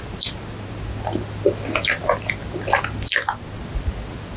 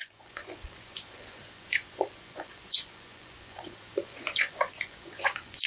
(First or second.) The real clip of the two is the first